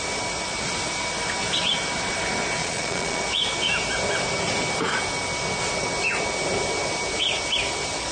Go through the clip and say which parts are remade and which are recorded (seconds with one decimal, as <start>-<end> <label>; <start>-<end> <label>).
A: 0.0-2.6 recorded; 2.6-3.2 remade; 3.2-8.1 recorded